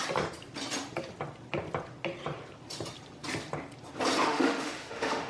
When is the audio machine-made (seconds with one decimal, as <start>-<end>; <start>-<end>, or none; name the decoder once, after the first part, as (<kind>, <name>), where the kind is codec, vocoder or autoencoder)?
4.2-5.3 (autoencoder, DAC-VAE)